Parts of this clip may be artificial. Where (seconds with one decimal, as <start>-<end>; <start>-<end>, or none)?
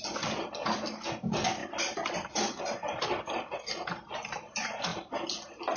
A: none